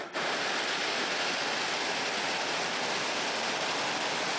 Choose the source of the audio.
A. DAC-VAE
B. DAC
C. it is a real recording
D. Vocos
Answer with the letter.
C